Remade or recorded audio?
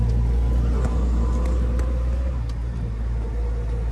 recorded